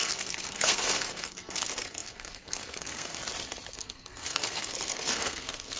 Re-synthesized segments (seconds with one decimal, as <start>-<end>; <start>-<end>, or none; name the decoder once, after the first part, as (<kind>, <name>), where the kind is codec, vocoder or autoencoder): 0.0-3.2 (codec, SNAC); 3.7-5.8